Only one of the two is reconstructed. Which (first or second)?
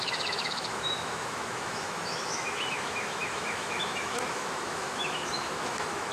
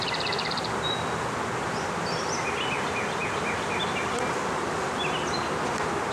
first